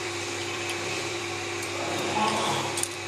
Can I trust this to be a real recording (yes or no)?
no